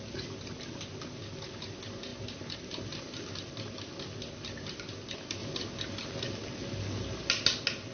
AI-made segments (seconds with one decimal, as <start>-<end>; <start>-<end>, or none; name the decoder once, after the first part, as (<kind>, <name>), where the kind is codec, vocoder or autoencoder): none